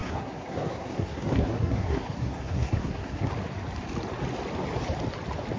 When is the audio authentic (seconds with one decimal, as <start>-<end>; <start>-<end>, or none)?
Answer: 3.3-5.6